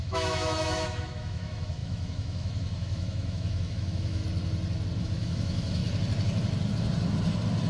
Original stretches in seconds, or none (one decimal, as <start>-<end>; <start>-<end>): 4.2-5.0; 5.8-7.7